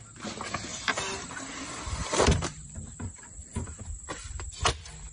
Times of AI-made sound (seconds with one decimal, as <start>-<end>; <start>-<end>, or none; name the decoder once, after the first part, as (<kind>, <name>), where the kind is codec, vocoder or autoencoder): 0.7-3.8 (vocoder, BigVGAN v2)